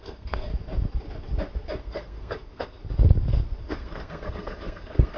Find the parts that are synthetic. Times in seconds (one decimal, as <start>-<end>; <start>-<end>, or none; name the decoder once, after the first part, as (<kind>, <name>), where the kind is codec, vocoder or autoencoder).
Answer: 0.0-0.5 (codec, SNAC); 1.8-2.8; 3.6-5.2